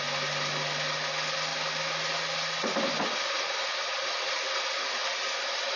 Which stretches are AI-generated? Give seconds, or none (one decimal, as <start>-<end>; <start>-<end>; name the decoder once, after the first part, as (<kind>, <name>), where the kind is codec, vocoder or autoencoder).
none